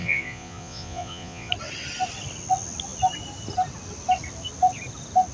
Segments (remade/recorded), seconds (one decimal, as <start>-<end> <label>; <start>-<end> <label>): 0.0-1.5 remade; 1.5-5.3 recorded